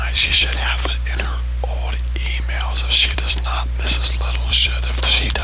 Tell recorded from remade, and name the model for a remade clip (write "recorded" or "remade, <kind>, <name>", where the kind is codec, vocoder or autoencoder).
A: remade, vocoder, BigVGAN v2